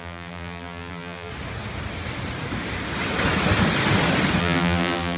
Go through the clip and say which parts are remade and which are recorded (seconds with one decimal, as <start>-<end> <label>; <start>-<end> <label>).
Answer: 0.0-1.3 remade; 1.3-4.4 recorded; 4.4-5.2 remade